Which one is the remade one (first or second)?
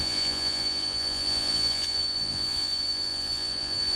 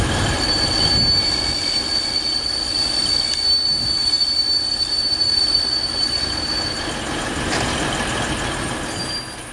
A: first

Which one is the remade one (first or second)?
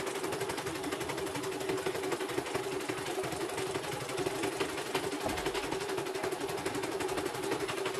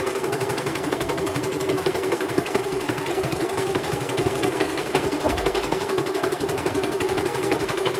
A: second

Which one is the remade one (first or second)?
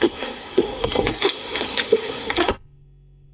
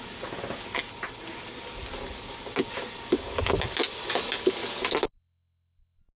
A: first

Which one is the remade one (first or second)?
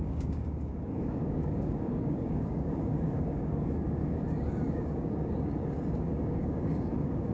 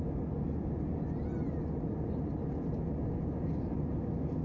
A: first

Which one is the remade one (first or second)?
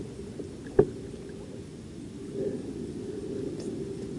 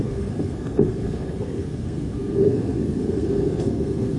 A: second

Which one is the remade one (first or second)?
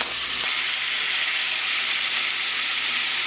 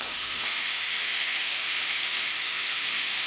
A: second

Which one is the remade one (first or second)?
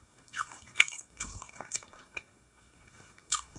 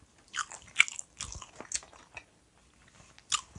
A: first